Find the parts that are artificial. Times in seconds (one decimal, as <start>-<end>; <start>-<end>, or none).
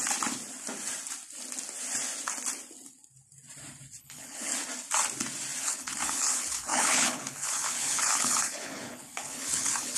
4.0-4.5; 5.6-10.0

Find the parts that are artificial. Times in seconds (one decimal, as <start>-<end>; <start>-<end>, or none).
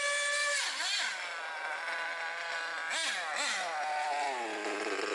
none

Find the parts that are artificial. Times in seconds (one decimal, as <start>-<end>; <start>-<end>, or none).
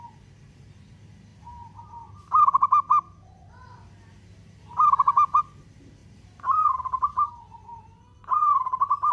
6.0-7.3; 8.4-9.1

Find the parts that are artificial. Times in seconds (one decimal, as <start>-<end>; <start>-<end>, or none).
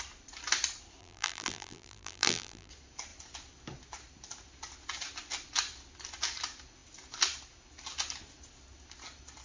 1.0-2.7